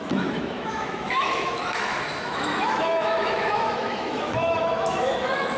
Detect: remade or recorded remade